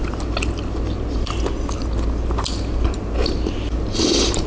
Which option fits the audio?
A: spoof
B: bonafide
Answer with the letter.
B